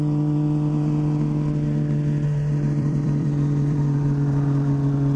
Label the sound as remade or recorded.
remade